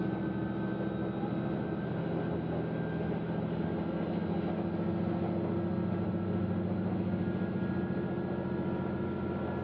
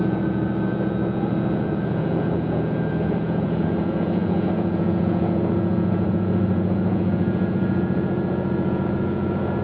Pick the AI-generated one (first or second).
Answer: second